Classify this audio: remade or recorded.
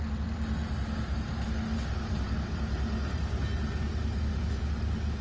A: recorded